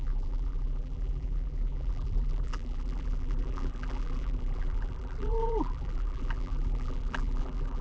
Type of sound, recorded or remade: remade